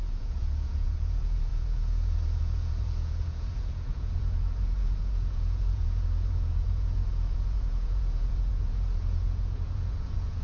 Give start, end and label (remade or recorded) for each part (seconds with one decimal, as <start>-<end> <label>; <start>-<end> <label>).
0.0-10.4 remade